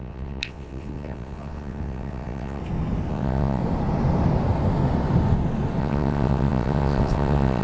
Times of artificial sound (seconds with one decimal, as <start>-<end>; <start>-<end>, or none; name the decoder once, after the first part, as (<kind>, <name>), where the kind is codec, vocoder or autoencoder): 0.0-2.6 (vocoder, WaveNeXt); 3.1-3.6; 5.8-7.6